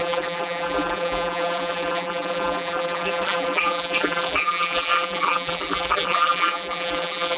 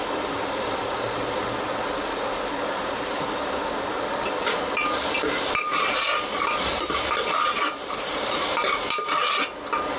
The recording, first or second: second